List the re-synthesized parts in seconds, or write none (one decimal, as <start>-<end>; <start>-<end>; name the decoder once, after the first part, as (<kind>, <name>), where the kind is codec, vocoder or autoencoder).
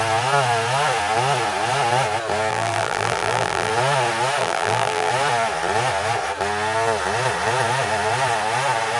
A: 2.5-3.7 (vocoder, BigVGAN v2); 4.4-5.1